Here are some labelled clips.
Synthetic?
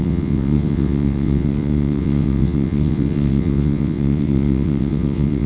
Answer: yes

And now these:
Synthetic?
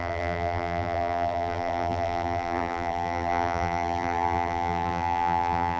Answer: yes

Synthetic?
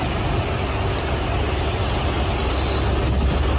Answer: no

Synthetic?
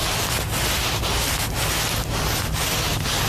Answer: no